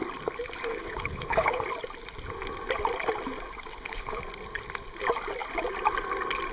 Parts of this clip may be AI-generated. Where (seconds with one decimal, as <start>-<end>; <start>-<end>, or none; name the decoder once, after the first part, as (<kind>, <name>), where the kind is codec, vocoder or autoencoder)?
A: 0.7-1.6 (codec, HILCodec); 3.7-4.2